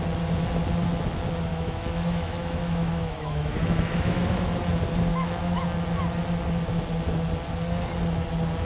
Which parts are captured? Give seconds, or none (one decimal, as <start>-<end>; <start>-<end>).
0.0-1.5; 4.5-5.1; 5.6-8.6